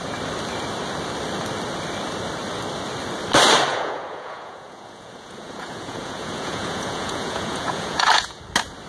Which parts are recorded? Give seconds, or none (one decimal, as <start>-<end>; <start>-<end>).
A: 0.0-3.7; 8.4-8.9